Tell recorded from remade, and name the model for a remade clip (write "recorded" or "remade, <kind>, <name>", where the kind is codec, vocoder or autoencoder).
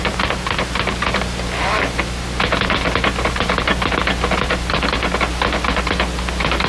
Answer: recorded